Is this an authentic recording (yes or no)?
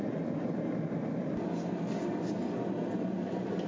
yes